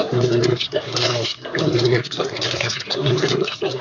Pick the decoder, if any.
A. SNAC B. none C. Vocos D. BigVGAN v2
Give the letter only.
A